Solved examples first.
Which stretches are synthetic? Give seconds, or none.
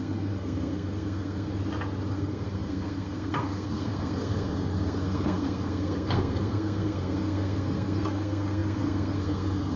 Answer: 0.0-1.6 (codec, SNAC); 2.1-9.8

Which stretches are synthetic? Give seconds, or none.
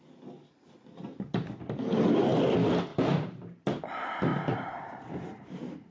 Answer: 2.9-3.8 (vocoder, BigVGAN v2); 4.3-5.9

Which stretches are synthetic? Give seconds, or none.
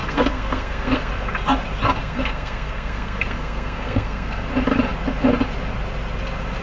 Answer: 0.0-1.1 (codec, SNAC); 2.0-4.5